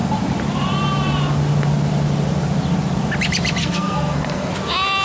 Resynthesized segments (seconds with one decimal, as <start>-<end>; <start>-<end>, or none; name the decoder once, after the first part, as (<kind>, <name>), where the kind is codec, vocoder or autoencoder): 3.6-4.5 (codec, SNAC)

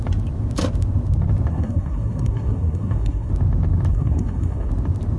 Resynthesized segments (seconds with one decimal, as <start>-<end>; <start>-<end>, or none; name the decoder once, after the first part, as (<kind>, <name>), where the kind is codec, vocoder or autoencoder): 1.5-3.3 (codec, SNAC); 3.9-4.7

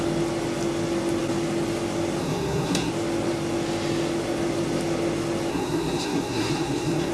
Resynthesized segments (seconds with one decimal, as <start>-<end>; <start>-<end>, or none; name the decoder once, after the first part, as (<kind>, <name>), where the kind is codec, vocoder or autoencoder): 2.2-2.9 (codec, SNAC); 5.5-7.1